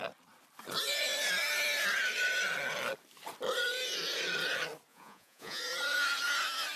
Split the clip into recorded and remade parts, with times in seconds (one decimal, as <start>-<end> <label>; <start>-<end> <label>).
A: 0.0-4.9 recorded; 4.9-5.6 remade; 5.6-6.8 recorded